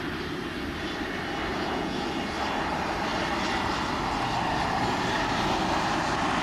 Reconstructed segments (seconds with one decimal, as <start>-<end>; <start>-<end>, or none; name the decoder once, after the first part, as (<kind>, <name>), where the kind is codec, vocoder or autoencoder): 1.5-2.1 (vocoder, Vocos)